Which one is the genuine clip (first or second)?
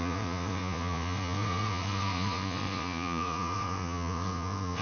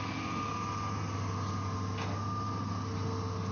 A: second